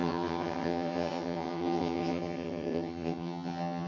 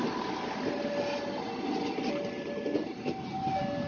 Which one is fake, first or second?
first